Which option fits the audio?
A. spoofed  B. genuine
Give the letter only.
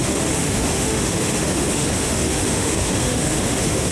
A